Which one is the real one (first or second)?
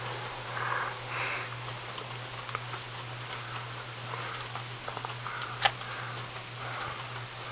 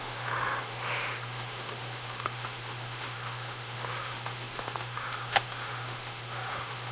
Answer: first